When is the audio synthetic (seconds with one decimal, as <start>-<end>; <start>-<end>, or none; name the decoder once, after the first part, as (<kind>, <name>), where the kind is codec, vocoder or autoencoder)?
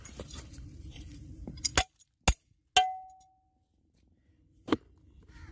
0.0-1.7 (vocoder, BigVGAN v2); 3.8-5.5